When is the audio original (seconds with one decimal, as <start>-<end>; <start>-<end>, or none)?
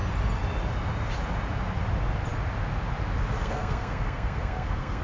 0.0-3.4